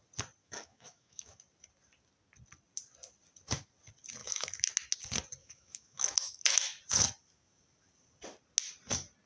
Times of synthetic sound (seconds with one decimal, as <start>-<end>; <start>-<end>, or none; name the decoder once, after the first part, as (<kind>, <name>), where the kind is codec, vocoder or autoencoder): 0.4-1.4 (autoencoder, DAC-VAE); 4.2-4.7; 5.4-6.8